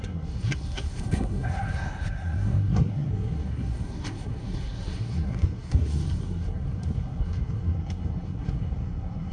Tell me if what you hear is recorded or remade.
remade